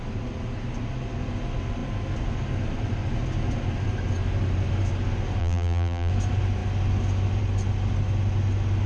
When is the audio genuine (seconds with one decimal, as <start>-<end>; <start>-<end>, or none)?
0.0-5.4; 6.1-8.9